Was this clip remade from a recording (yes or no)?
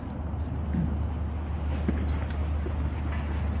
no